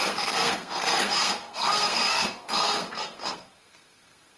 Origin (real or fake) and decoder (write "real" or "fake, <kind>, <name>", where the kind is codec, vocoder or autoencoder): fake, codec, SNAC